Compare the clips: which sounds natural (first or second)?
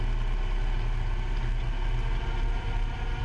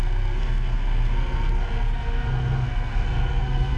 first